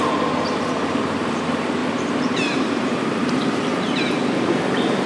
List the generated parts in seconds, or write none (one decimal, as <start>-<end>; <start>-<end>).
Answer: 1.8-4.0